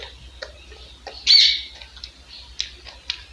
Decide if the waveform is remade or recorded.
recorded